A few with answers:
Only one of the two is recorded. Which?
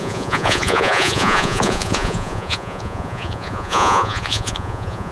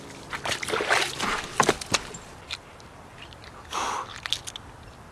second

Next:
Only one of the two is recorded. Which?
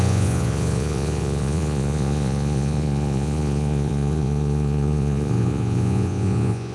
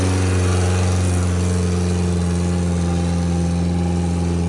second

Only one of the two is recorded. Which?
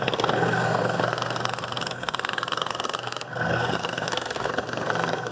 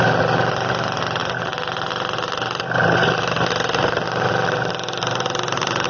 second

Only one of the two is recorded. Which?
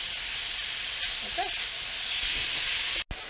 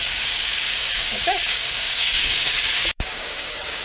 first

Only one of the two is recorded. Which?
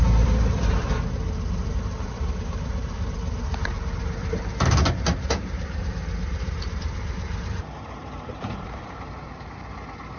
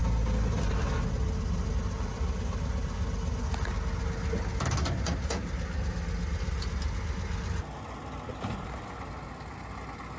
second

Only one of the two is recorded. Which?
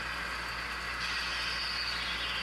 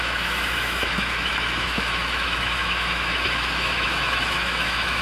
first